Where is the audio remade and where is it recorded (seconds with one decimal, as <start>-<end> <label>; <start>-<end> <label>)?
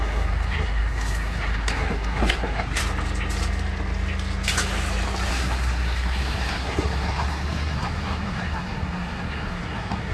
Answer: 0.0-2.8 remade; 2.8-5.3 recorded; 5.3-10.1 remade